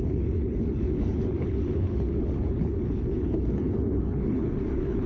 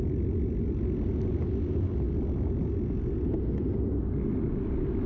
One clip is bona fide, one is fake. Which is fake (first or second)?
first